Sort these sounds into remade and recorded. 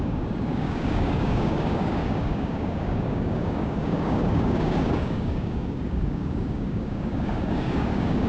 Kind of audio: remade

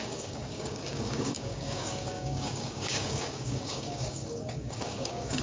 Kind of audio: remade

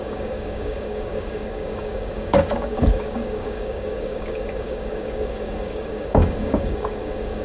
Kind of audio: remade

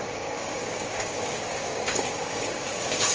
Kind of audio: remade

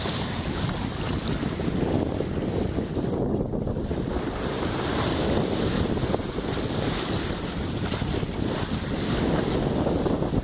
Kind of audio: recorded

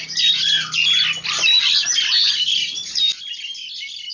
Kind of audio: recorded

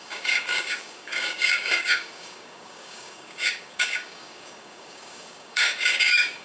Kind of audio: remade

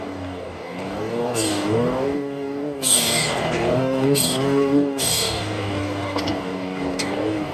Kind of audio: remade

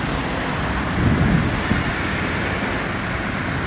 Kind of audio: recorded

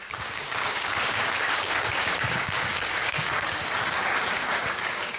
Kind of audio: remade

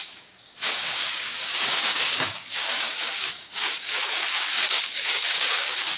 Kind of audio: remade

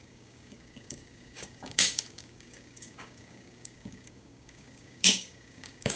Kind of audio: remade